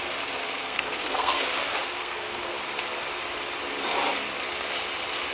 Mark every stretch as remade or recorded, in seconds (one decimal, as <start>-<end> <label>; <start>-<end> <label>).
0.0-0.4 recorded; 0.4-1.5 remade; 1.5-2.0 recorded; 2.0-2.5 remade; 2.5-5.3 recorded